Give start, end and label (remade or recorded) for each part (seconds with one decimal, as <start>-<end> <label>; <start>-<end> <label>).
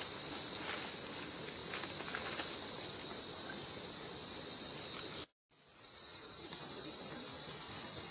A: 0.0-5.7 recorded; 5.7-6.5 remade; 6.5-8.1 recorded